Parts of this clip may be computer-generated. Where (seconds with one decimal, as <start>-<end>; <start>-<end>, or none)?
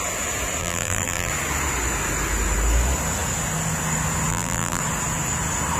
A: 0.6-1.3; 4.3-4.8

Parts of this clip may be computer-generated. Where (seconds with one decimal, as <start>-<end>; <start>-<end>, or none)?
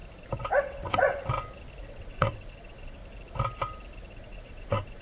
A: 0.6-1.2; 1.8-3.0; 4.1-5.0